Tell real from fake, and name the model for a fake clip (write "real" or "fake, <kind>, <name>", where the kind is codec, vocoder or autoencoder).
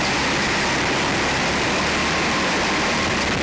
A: real